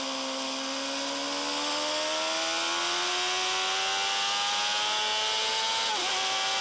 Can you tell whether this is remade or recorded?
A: recorded